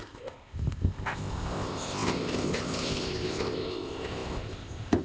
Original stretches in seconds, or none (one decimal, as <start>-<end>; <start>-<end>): none